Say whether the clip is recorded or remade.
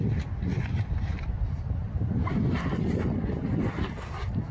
recorded